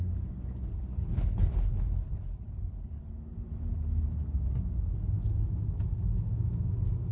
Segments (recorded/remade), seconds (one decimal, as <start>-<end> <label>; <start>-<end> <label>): 0.0-0.7 recorded; 0.7-3.1 remade; 3.1-7.1 recorded